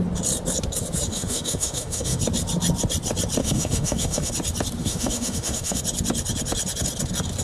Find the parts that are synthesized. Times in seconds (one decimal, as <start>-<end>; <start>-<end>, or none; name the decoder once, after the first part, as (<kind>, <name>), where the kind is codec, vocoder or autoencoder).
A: 1.1-2.2 (autoencoder, DAC-VAE); 3.4-4.3; 4.8-5.8